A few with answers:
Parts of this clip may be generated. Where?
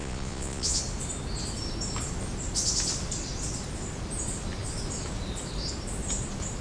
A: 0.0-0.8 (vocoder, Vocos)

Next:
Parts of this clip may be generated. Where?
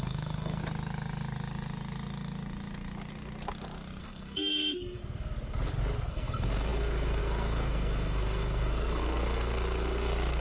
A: 0.0-0.6 (codec, SNAC); 4.0-5.0; 6.1-10.4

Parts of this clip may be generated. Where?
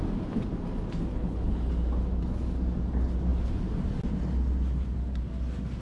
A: 1.1-1.7 (codec, HILCodec)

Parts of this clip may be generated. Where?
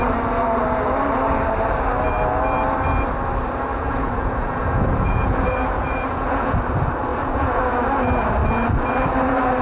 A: 3.7-6.6 (vocoder, Vocos); 7.1-7.6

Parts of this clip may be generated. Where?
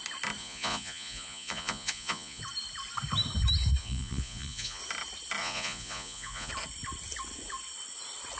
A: 0.4-2.4 (vocoder, Vocos); 3.8-4.8; 5.4-6.5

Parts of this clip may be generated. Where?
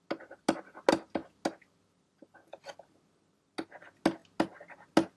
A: none